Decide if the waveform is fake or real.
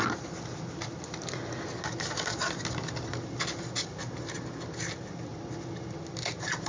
real